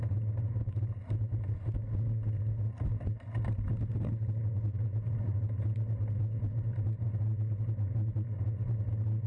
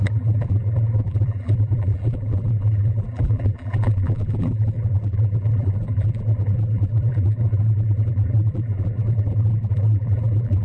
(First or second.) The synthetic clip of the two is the second